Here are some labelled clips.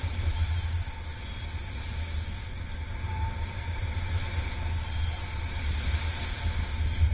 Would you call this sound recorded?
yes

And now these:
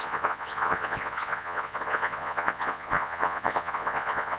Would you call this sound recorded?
no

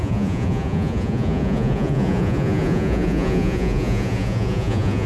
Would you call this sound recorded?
no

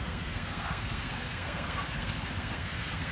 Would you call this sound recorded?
no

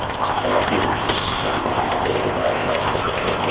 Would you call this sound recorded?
no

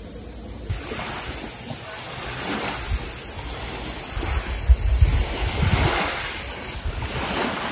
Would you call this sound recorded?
yes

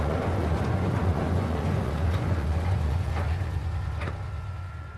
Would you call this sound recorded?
no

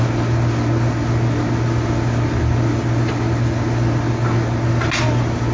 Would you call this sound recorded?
yes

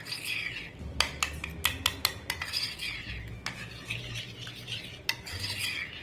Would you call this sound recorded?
yes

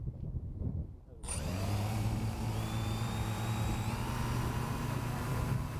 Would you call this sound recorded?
no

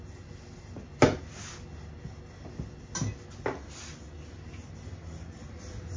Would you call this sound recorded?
yes